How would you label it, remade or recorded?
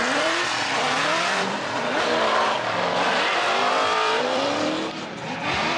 remade